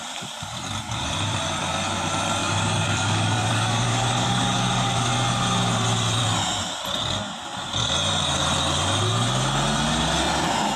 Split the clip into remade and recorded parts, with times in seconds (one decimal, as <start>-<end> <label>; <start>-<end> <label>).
0.0-2.4 recorded; 2.4-5.1 remade; 5.1-10.8 recorded